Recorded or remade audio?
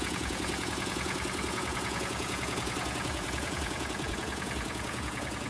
remade